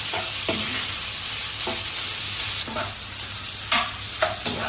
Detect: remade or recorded recorded